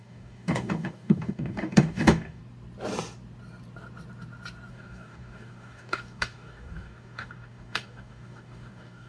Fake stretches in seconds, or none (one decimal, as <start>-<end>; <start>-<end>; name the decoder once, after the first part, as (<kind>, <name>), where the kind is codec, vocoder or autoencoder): 0.0-2.4 (codec, DAC); 4.7-9.1